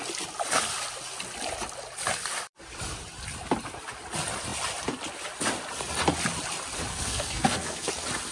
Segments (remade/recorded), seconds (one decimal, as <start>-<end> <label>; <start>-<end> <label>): 0.0-6.9 recorded; 6.9-7.9 remade; 7.9-8.3 recorded